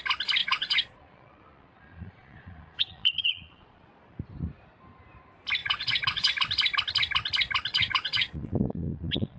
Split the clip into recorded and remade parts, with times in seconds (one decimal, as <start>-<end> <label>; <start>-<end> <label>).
0.0-0.4 recorded; 0.4-4.2 remade; 4.2-5.6 recorded; 5.6-6.3 remade; 6.3-7.7 recorded; 7.7-9.4 remade